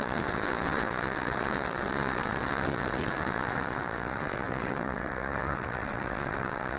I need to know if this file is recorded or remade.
remade